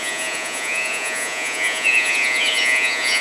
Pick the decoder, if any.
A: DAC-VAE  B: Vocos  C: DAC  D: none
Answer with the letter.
B